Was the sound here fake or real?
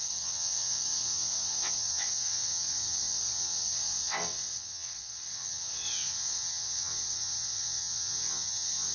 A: fake